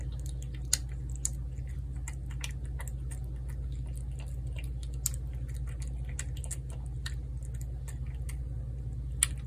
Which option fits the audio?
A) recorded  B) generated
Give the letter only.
A